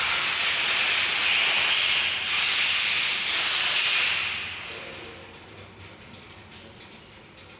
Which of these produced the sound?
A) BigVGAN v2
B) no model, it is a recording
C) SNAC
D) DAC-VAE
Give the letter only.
B